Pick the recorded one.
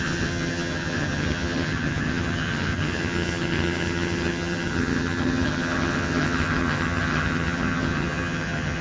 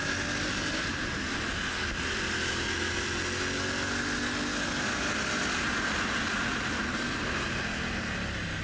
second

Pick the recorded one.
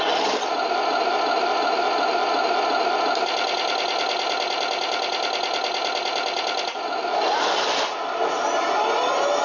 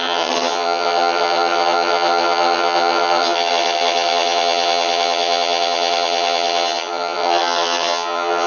first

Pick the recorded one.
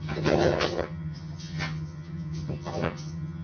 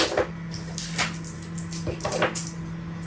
second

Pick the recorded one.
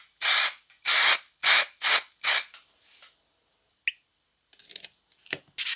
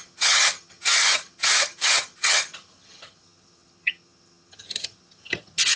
first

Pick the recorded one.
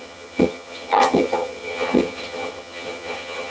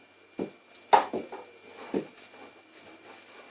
second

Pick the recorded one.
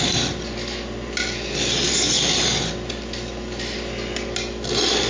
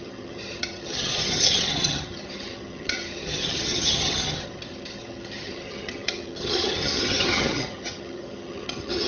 first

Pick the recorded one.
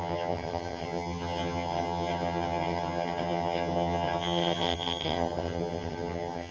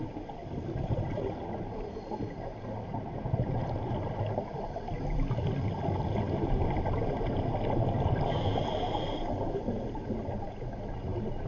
second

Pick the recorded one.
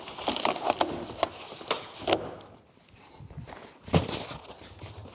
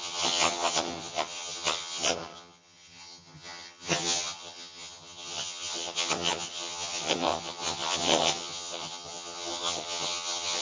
first